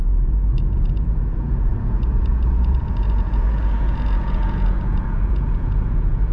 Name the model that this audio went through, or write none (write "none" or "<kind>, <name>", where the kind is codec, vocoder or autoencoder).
vocoder, Vocos